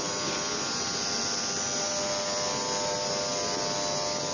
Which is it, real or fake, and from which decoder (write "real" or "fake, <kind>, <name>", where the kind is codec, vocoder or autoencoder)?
real